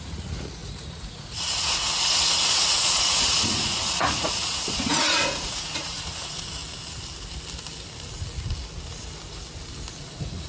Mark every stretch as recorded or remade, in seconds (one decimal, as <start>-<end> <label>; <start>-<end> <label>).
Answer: 0.0-6.6 remade; 6.6-10.0 recorded; 10.0-10.5 remade